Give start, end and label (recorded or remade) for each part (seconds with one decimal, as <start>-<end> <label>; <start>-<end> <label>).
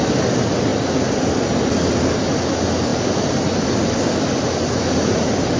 0.0-5.6 recorded